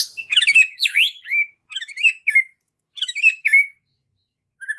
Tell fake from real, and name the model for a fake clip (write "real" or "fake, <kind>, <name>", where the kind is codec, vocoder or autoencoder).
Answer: fake, autoencoder, DAC-VAE